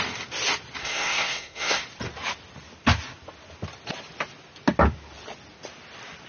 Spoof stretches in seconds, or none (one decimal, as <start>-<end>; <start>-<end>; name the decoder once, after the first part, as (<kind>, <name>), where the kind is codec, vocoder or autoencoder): 0.8-1.8 (codec, SNAC)